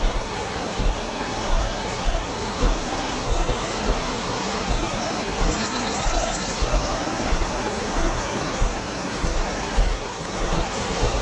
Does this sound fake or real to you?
fake